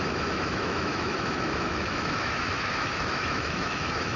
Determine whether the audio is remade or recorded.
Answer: remade